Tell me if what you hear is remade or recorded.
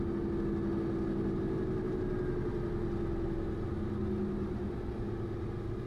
recorded